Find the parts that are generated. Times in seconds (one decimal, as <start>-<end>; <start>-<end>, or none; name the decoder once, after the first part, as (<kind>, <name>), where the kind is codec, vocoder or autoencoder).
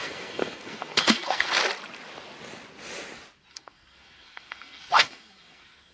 0.0-1.6 (codec, SNAC); 3.5-5.9